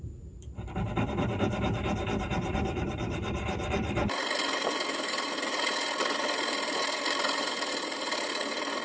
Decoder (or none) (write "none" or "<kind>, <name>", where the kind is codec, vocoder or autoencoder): vocoder, BigVGAN v2